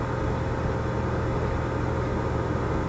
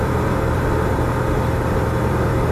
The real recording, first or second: first